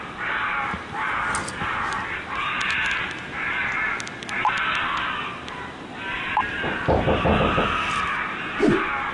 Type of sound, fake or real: real